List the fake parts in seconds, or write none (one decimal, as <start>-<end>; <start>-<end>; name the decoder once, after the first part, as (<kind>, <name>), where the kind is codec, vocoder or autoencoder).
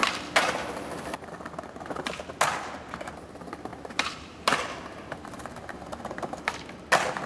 3.7-6.3 (vocoder, BigVGAN v2)